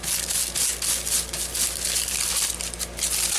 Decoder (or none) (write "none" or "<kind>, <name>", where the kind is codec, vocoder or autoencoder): none